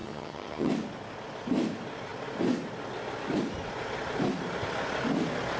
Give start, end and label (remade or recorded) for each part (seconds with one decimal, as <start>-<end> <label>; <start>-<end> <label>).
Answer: 0.0-0.7 remade; 0.7-5.6 recorded